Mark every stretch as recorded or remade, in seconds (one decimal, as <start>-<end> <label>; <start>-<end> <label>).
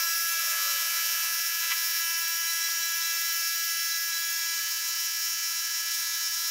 0.0-0.4 recorded; 0.4-2.0 remade; 2.0-4.6 recorded; 4.6-6.5 remade